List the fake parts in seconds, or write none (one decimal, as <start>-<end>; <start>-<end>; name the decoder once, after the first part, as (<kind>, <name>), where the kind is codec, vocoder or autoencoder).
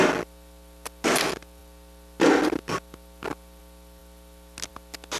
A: none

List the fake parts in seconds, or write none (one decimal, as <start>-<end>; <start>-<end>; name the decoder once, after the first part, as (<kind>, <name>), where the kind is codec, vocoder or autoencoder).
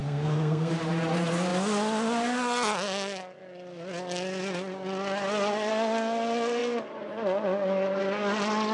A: 0.0-0.7 (codec, SNAC)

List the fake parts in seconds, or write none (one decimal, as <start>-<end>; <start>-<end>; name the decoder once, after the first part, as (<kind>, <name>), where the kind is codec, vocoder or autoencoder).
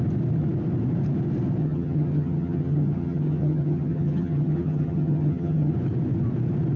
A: 1.6-5.7 (vocoder, HiFi-GAN)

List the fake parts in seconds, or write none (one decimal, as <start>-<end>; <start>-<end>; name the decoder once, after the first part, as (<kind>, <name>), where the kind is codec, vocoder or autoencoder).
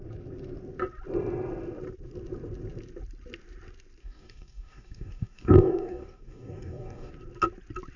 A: 4.0-7.1 (codec, DAC)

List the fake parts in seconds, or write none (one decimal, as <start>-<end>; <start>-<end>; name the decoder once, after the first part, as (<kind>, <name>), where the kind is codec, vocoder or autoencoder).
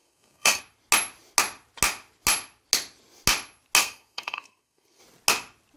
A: 0.0-0.6 (codec, SNAC); 3.8-5.0